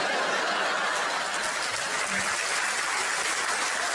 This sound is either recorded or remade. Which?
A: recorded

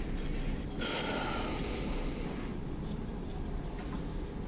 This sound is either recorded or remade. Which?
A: recorded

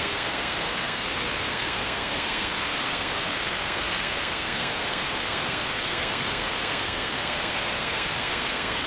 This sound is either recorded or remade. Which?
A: remade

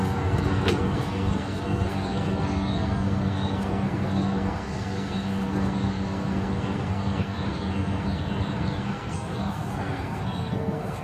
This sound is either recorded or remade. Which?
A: remade